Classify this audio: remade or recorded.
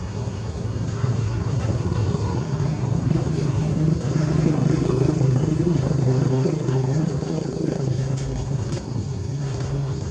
remade